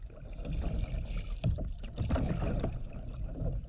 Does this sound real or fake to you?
real